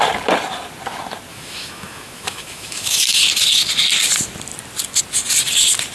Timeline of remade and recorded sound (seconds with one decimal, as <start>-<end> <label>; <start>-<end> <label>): 0.0-1.3 recorded; 1.3-3.2 remade; 3.2-5.9 recorded